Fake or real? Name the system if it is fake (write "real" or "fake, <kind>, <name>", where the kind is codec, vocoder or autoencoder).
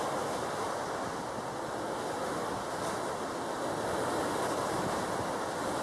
real